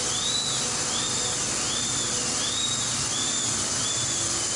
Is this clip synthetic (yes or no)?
no